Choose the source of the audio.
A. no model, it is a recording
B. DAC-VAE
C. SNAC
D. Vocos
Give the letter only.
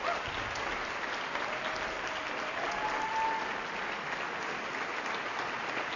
A